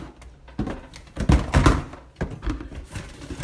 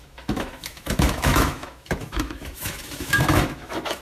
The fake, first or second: second